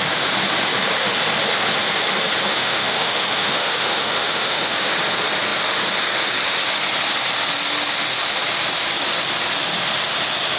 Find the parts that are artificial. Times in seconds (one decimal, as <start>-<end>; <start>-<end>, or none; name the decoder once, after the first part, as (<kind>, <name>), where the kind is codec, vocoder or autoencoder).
2.5-4.8 (autoencoder, DAC-VAE)